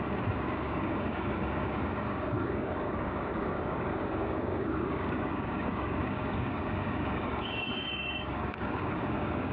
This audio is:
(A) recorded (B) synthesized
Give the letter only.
B